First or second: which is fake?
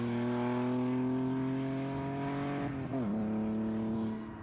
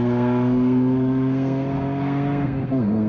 second